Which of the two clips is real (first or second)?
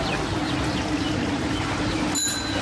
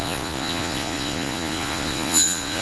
first